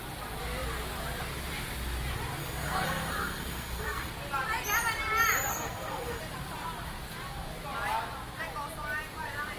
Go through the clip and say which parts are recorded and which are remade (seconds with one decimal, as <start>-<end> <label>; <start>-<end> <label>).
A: 0.0-2.4 recorded; 2.4-4.1 remade; 4.1-5.5 recorded; 5.5-6.2 remade; 6.2-9.6 recorded